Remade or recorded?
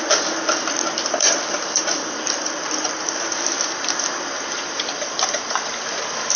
remade